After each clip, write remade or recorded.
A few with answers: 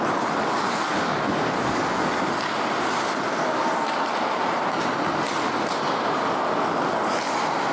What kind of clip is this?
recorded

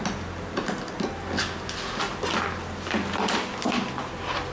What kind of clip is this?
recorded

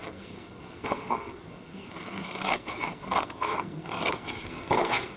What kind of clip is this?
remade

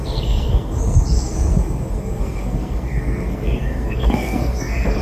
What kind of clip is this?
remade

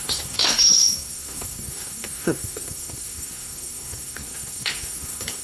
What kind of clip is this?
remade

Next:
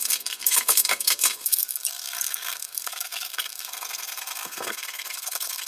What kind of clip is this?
remade